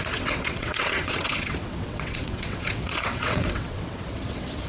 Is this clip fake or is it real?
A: fake